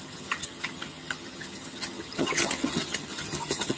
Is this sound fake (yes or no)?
yes